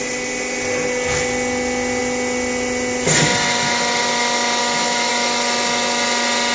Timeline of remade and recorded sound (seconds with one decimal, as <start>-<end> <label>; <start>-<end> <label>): 0.0-4.6 recorded; 4.6-5.1 remade; 5.1-6.5 recorded